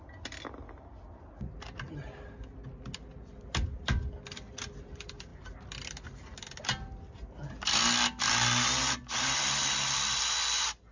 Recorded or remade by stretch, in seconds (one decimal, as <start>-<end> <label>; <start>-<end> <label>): 0.0-10.9 recorded